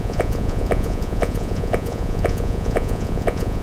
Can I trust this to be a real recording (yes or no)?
no